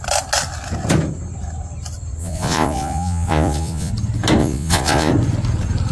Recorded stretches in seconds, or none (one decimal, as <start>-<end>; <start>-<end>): 0.0-2.2; 3.9-4.4; 5.1-5.9